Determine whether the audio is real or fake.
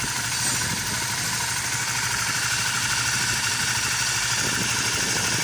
real